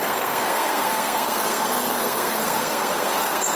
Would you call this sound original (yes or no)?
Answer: no